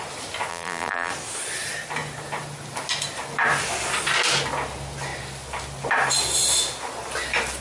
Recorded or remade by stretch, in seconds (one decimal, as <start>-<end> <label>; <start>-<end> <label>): 0.0-0.5 recorded; 0.5-1.1 remade; 1.1-7.6 recorded